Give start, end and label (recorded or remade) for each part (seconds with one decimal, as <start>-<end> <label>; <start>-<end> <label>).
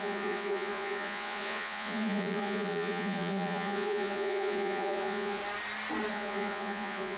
0.0-5.4 remade; 5.4-6.1 recorded; 6.1-7.2 remade